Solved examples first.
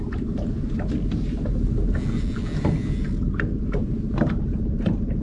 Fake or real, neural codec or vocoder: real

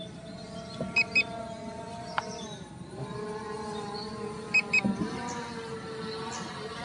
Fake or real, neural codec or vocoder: real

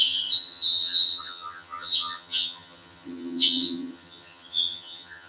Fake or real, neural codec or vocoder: fake, vocoder, HiFi-GAN